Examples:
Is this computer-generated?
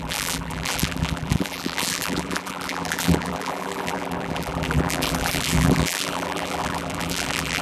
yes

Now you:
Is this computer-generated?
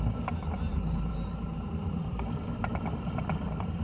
yes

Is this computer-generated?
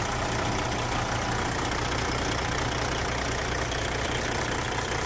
no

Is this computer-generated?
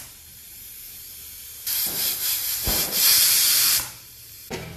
yes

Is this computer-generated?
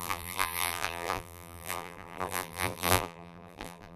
yes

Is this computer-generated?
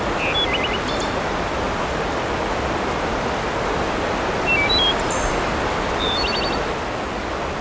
no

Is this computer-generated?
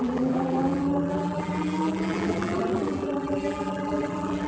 yes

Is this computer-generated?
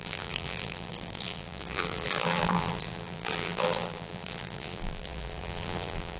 yes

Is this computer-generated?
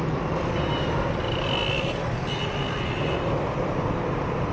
yes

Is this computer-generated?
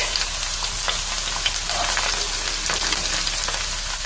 no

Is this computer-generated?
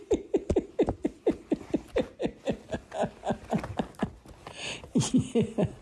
no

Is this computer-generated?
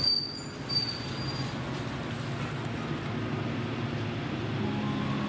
no